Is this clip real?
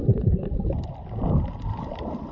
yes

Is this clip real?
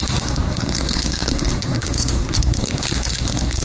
no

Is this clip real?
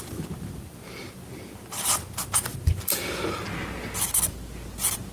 yes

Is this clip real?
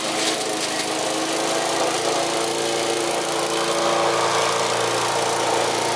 yes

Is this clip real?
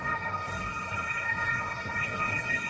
no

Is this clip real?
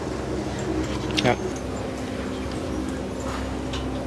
yes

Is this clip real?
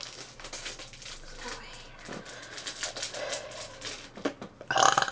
yes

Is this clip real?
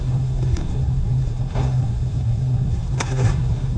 no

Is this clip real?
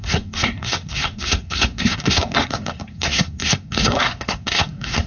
no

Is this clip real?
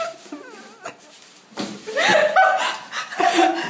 yes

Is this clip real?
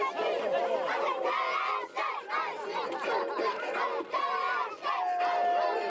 yes